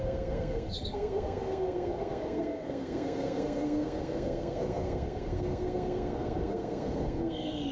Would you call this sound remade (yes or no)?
yes